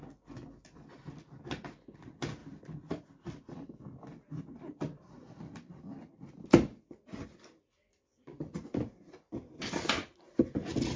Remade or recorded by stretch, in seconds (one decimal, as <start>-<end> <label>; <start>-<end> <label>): 0.0-11.0 recorded